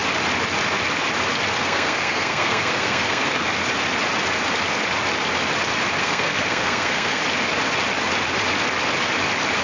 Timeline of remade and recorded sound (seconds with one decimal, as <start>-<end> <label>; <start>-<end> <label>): 0.0-1.6 recorded; 1.6-3.5 remade; 3.5-6.0 recorded; 6.0-7.2 remade; 7.2-9.6 recorded